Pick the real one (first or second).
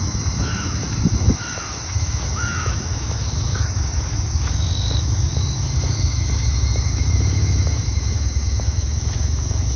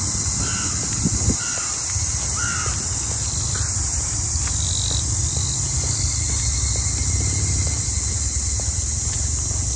second